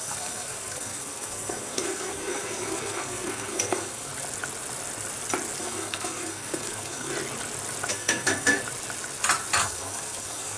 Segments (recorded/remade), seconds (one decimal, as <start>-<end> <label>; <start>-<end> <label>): 0.0-4.1 remade; 4.1-5.6 recorded; 5.6-7.1 remade; 7.1-7.9 recorded; 7.9-8.6 remade; 8.6-9.6 recorded; 9.6-10.6 remade